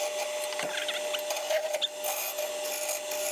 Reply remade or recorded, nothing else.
recorded